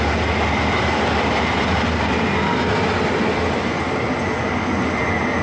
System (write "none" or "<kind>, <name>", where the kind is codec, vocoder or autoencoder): none